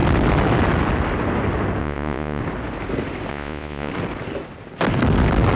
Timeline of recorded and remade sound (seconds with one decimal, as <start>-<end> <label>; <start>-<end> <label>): 0.0-1.8 recorded; 1.8-2.4 remade; 2.4-3.3 recorded; 3.3-3.9 remade; 3.9-5.6 recorded